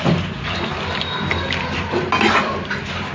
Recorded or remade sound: recorded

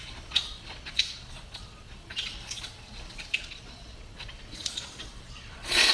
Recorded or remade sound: remade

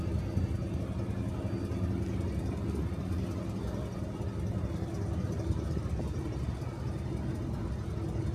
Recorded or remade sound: recorded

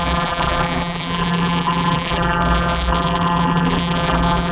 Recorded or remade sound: remade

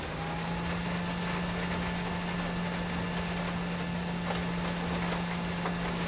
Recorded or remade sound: recorded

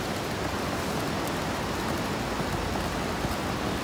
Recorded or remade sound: recorded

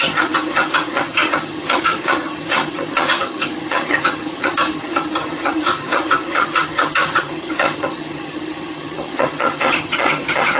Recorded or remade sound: remade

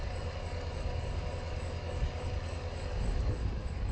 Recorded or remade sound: remade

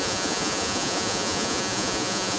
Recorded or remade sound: remade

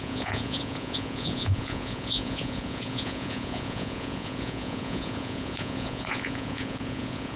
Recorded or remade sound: remade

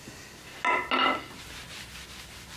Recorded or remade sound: recorded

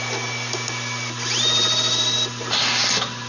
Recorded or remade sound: recorded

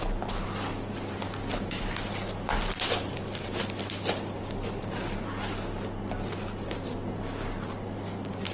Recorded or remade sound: recorded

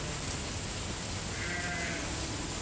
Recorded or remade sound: recorded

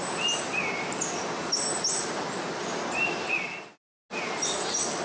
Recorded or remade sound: recorded